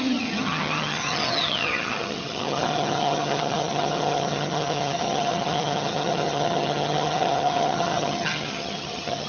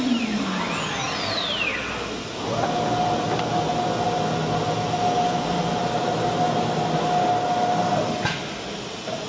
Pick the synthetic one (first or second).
first